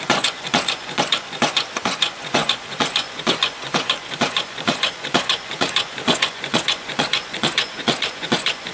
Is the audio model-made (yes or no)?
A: yes